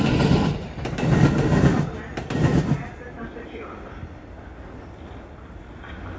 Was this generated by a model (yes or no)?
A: no